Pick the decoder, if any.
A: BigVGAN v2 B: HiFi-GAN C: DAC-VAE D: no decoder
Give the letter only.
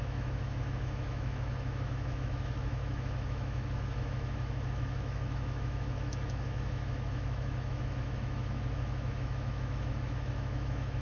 C